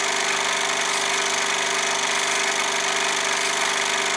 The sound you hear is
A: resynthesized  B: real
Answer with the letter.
B